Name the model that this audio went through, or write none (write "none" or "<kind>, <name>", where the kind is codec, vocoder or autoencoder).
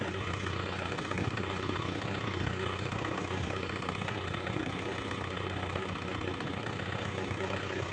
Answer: codec, SNAC